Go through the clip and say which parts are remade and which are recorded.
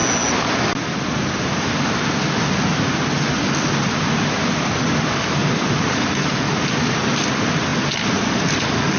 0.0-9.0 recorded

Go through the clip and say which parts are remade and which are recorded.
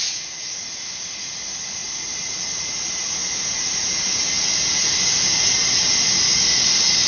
0.0-3.2 remade; 3.2-6.6 recorded; 6.6-7.1 remade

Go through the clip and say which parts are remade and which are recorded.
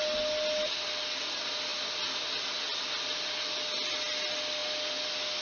0.0-5.4 recorded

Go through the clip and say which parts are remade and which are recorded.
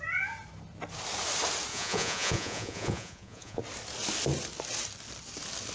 0.0-1.7 recorded; 1.7-3.6 remade; 3.6-5.7 recorded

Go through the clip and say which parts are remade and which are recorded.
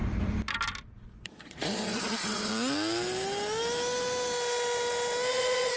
0.0-0.8 recorded; 0.8-2.5 remade; 2.5-5.3 recorded; 5.3-5.8 remade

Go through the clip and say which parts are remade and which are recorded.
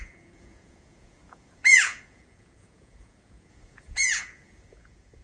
0.0-5.2 remade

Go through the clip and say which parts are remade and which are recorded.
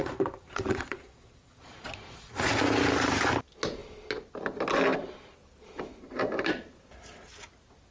0.0-2.5 remade; 2.5-7.9 recorded